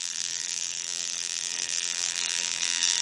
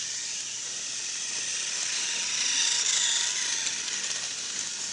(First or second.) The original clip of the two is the second